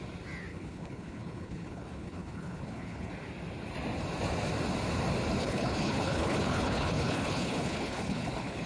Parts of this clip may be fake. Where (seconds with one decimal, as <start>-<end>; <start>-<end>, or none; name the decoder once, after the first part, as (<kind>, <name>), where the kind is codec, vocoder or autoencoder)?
0.5-3.1 (codec, HILCodec); 5.4-8.7

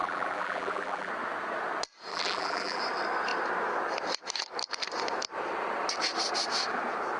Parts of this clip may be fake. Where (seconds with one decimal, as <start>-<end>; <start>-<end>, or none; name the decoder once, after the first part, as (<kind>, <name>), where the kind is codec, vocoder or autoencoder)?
0.0-1.1 (vocoder, BigVGAN v2); 2.1-2.8

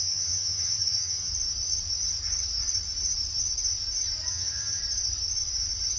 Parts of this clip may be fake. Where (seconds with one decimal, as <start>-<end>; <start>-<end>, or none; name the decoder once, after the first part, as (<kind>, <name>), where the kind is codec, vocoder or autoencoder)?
0.0-1.3 (vocoder, HiFi-GAN); 4.3-4.8

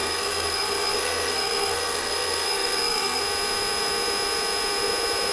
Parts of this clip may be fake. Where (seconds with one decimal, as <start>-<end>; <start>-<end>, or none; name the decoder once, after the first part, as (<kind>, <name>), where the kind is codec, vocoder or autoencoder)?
0.0-3.2 (codec, SNAC)

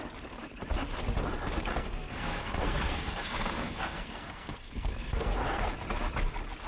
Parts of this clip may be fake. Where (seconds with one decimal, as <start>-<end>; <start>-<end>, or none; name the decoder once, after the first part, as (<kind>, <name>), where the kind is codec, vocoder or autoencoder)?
1.7-5.7 (codec, SNAC)

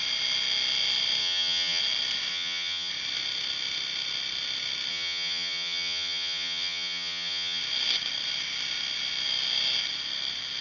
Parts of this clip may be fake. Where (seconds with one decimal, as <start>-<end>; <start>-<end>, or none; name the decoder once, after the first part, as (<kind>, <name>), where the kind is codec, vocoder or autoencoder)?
1.2-1.8 (vocoder, HiFi-GAN); 2.3-2.9; 4.9-7.6

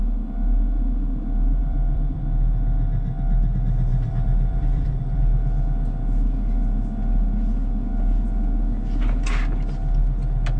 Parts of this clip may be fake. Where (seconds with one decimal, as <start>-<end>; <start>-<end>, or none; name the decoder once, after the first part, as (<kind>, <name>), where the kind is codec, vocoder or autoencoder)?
1.6-2.2 (vocoder, BigVGAN v2); 3.9-5.2

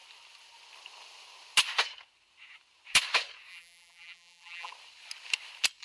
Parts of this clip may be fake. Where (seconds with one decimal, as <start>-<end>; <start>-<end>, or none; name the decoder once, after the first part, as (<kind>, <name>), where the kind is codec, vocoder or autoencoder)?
3.5-4.7 (vocoder, BigVGAN v2)